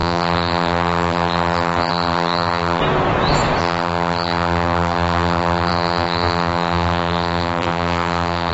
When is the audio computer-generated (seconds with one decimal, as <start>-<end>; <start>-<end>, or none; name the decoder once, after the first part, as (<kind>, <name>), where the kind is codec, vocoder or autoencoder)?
0.0-2.8 (vocoder, BigVGAN v2); 3.6-8.5